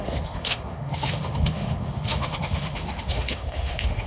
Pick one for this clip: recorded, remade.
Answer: remade